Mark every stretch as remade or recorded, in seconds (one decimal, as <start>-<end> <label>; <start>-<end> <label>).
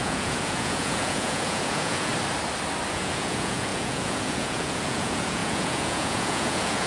0.0-2.1 remade; 2.1-2.9 recorded; 2.9-6.9 remade